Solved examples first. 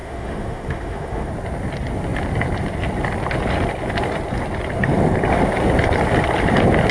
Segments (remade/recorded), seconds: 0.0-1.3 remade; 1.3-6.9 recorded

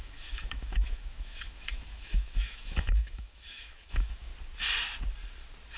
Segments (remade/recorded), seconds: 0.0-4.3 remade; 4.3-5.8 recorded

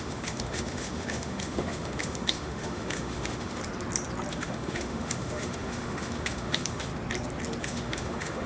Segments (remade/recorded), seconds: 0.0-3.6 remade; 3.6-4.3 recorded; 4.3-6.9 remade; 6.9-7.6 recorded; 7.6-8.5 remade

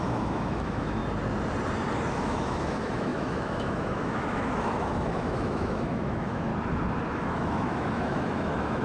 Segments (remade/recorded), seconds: 0.0-1.0 remade; 1.0-2.1 recorded; 2.1-6.5 remade; 6.5-7.1 recorded; 7.1-8.8 remade

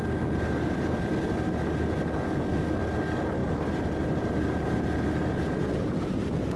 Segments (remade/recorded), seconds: 0.0-6.6 recorded

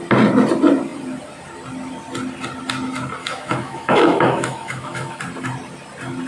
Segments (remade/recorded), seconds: 0.0-3.2 recorded; 3.2-5.2 remade; 5.2-6.3 recorded